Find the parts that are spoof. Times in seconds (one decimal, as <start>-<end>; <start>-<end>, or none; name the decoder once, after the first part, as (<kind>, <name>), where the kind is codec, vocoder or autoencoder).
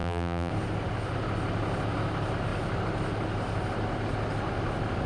0.0-0.5 (vocoder, BigVGAN v2)